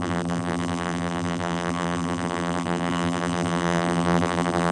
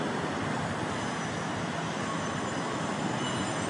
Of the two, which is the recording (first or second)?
second